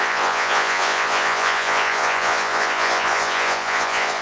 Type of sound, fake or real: fake